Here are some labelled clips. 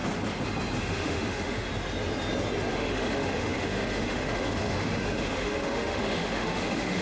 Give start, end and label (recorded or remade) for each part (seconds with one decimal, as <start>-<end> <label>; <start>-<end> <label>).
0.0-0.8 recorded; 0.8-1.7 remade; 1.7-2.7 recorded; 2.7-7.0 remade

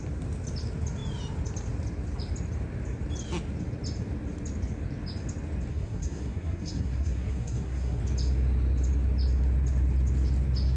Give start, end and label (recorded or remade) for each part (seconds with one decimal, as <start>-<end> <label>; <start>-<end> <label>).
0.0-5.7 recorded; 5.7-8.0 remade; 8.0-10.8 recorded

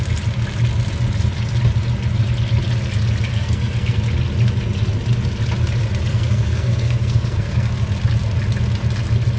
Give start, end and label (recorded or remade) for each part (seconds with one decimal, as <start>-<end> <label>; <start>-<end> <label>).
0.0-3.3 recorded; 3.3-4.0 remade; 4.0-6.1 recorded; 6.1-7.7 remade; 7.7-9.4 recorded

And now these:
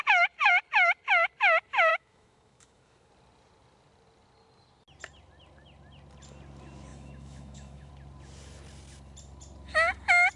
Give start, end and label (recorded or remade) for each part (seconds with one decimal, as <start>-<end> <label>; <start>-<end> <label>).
0.0-1.9 recorded; 1.9-3.1 remade; 3.1-6.9 recorded; 6.9-7.9 remade; 7.9-10.4 recorded

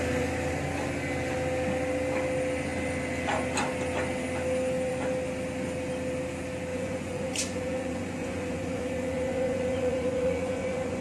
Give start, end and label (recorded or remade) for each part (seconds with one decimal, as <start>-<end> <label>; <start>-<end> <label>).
0.0-6.7 recorded; 6.7-11.0 remade